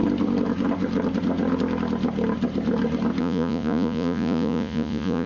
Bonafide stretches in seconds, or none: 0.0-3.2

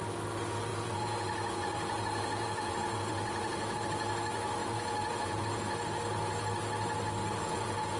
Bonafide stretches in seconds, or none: 0.0-0.7; 3.8-4.6; 5.4-7.2

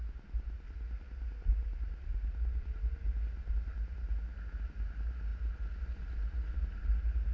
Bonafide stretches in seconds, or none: 0.0-7.3

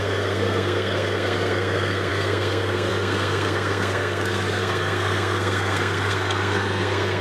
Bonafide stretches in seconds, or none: none

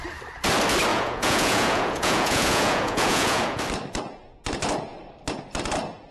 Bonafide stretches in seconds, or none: 0.0-0.9; 3.6-6.1

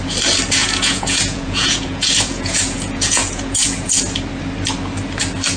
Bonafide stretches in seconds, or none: 0.0-0.6; 4.0-5.6